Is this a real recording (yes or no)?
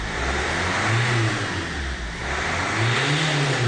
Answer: yes